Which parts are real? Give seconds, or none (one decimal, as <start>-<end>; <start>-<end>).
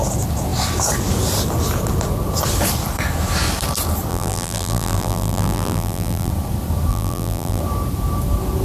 0.0-4.1; 6.3-6.9; 7.6-8.6